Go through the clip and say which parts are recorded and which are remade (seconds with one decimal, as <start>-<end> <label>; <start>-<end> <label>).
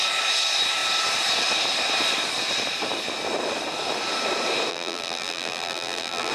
0.0-4.7 recorded; 4.7-6.3 remade